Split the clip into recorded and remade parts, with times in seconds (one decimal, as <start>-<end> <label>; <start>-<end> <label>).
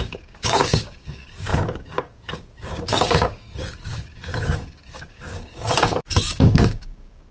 0.0-7.3 remade